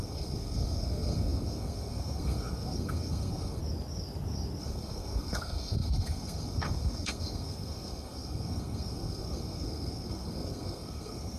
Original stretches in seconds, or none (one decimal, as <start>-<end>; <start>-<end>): 3.6-4.6